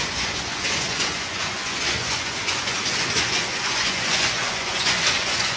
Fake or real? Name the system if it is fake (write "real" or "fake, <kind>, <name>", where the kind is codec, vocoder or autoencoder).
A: fake, vocoder, Vocos